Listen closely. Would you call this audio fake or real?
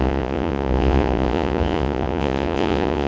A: fake